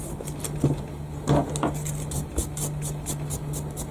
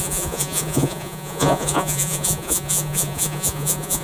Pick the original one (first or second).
first